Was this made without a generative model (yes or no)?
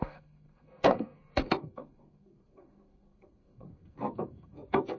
no